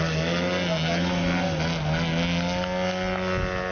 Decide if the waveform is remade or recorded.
recorded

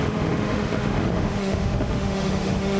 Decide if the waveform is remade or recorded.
remade